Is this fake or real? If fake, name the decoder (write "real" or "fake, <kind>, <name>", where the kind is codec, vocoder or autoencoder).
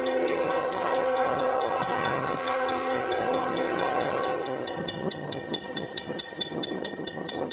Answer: fake, vocoder, HiFi-GAN